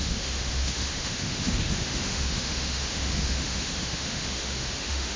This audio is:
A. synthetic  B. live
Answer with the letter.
A